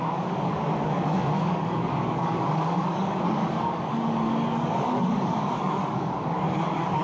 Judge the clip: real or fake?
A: fake